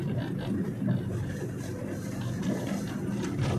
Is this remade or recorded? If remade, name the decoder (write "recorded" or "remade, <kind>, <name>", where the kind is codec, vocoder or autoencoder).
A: recorded